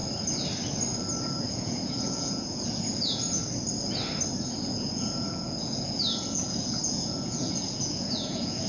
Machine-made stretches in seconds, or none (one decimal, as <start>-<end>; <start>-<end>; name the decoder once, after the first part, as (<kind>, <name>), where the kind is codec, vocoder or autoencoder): 1.2-3.4 (vocoder, Vocos); 4.7-8.7